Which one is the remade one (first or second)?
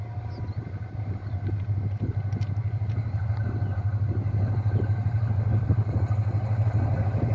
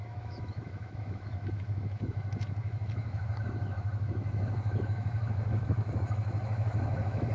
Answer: second